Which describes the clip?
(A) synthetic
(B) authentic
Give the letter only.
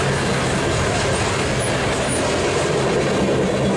B